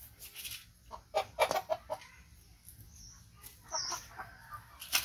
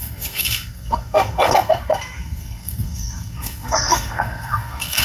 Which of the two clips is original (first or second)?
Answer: first